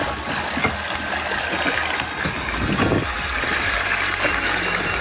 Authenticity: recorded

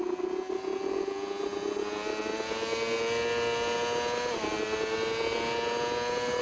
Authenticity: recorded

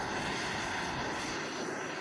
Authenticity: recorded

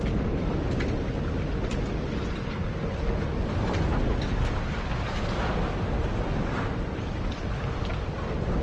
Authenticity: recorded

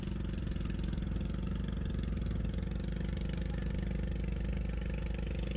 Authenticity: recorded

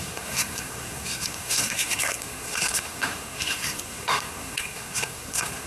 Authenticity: remade